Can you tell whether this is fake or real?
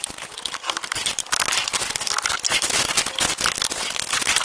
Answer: real